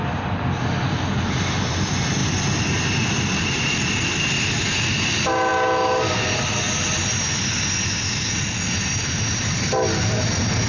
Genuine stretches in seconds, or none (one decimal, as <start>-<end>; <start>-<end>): 0.0-2.2; 4.3-10.7